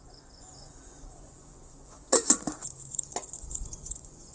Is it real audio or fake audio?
fake